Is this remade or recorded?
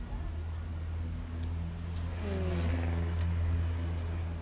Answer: recorded